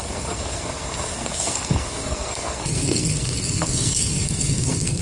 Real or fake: fake